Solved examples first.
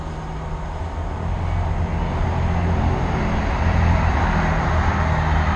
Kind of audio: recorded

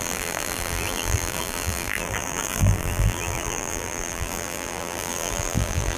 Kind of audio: remade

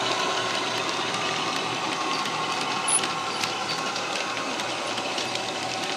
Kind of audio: remade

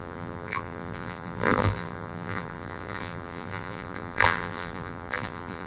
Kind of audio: remade